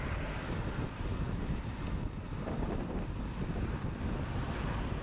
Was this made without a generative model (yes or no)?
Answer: yes